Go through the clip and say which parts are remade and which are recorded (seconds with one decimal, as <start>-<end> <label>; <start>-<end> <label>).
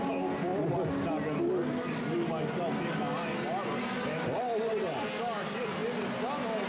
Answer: 0.0-6.7 recorded